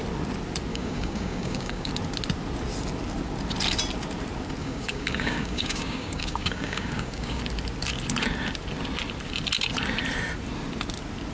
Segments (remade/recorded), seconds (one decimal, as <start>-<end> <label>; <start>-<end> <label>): 0.0-0.7 recorded; 0.7-1.9 remade; 1.9-4.6 recorded; 4.6-7.4 remade; 7.4-11.3 recorded